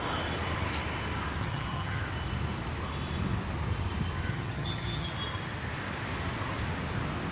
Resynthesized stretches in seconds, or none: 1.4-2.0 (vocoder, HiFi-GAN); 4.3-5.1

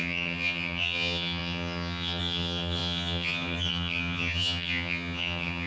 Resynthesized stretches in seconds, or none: 0.0-5.7 (vocoder, HiFi-GAN)